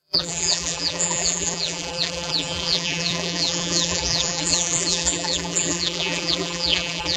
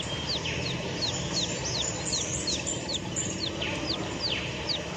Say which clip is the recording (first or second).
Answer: second